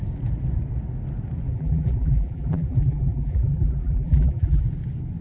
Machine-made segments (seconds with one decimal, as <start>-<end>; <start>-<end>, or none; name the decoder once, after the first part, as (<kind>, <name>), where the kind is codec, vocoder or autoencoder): 1.5-4.6 (vocoder, BigVGAN v2)